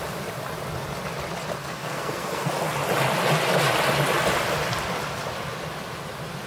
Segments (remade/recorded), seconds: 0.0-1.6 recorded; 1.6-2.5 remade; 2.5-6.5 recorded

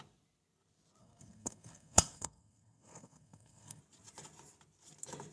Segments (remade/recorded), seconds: 0.0-1.0 recorded; 1.0-3.8 remade; 3.8-5.3 recorded

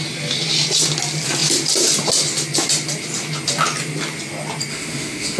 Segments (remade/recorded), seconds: 0.0-4.7 recorded; 4.7-5.4 remade

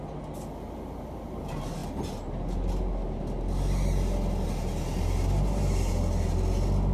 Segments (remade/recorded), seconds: 0.0-6.9 recorded

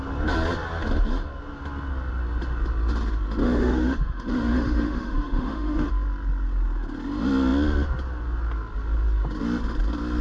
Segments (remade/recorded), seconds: 0.0-3.4 recorded; 3.4-5.9 remade; 5.9-10.2 recorded